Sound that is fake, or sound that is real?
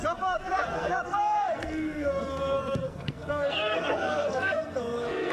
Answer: fake